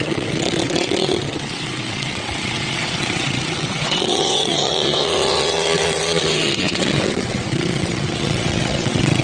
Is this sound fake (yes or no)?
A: yes